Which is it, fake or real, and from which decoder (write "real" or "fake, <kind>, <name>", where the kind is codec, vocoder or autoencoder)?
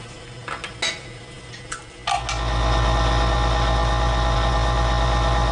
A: real